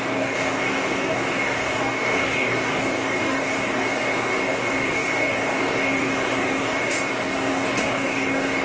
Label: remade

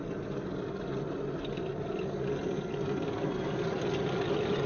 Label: recorded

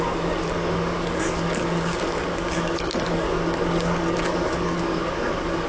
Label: remade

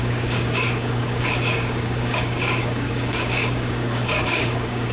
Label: remade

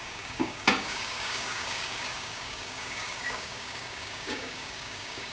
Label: remade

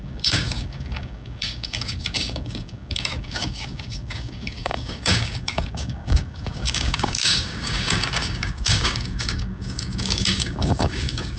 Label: remade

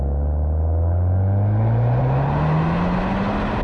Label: recorded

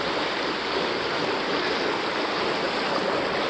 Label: recorded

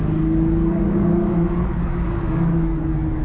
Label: remade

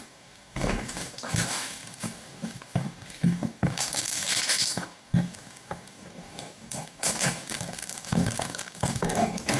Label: remade